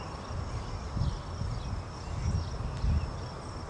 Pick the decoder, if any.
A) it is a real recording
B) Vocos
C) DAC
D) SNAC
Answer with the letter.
A